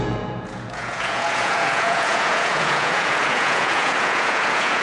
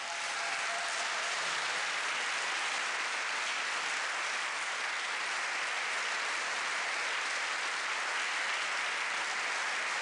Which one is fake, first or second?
first